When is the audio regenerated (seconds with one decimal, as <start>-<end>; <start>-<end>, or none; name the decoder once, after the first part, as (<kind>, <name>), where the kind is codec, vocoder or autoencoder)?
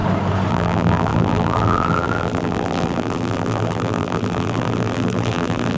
0.5-5.8 (vocoder, BigVGAN v2)